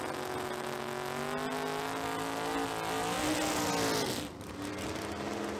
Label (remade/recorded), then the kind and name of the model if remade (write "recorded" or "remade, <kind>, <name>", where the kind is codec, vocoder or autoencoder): recorded